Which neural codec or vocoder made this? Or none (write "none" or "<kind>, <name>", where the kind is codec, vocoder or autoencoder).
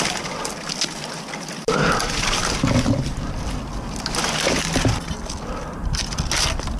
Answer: none